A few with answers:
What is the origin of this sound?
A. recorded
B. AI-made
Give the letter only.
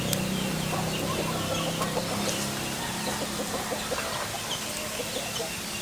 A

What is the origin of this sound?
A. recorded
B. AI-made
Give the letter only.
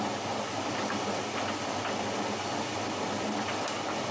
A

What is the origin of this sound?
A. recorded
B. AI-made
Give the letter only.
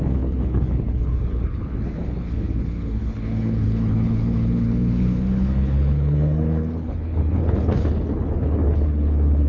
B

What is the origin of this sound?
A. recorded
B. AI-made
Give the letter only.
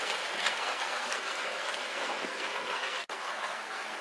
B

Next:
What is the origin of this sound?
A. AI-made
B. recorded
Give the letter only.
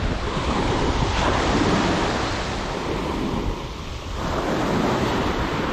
B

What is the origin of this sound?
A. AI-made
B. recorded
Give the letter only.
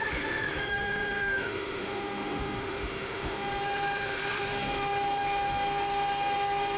A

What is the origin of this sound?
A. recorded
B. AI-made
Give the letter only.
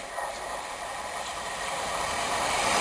B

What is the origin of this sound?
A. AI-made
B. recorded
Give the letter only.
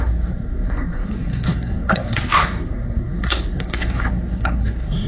A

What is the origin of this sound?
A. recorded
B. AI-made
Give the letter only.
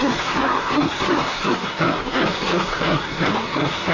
B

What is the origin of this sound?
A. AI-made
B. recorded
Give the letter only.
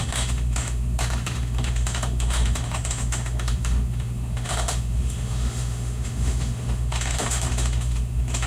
A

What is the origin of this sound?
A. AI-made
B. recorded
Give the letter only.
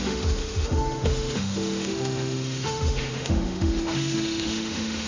A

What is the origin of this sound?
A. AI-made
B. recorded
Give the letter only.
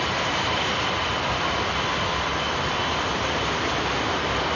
B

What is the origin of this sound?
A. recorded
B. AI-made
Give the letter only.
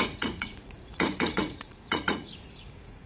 B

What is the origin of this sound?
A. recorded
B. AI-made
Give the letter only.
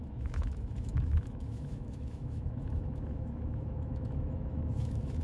B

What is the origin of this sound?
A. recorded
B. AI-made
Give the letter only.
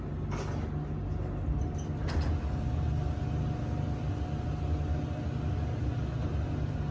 A